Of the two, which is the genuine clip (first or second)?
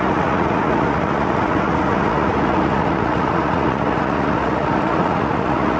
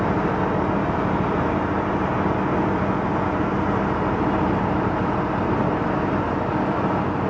second